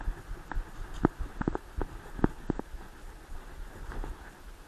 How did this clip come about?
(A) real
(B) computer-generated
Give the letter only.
A